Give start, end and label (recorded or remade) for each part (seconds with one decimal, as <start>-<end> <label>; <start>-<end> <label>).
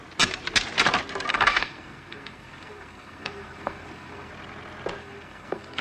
0.0-1.3 recorded; 1.3-4.3 remade; 4.3-5.0 recorded; 5.0-5.8 remade